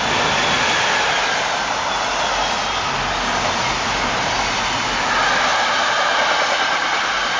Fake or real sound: real